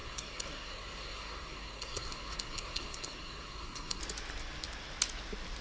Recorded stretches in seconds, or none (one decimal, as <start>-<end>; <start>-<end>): 4.0-5.6